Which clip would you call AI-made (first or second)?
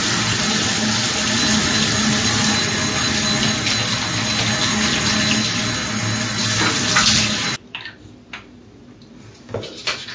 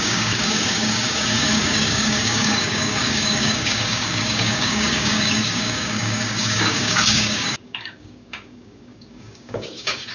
second